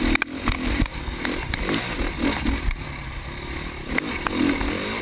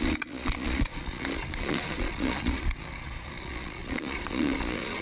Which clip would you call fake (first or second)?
second